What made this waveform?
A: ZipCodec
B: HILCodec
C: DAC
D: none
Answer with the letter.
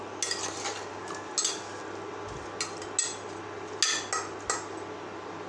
D